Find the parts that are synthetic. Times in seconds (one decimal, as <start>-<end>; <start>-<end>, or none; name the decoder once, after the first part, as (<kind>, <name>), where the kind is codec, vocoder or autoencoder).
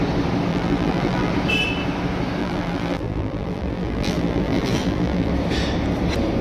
0.5-1.3 (vocoder, BigVGAN v2); 2.4-5.3